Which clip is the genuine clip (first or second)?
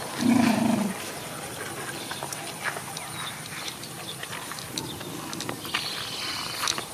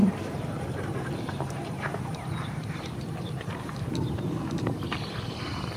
first